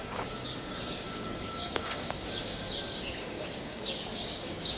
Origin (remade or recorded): remade